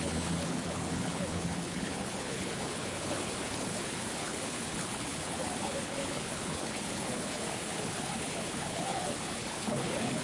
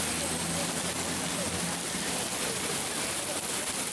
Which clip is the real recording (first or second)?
second